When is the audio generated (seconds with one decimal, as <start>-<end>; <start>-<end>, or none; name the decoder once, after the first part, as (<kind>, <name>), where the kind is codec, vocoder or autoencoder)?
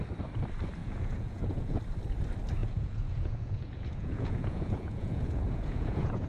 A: 0.8-1.8 (vocoder, Vocos); 2.6-6.3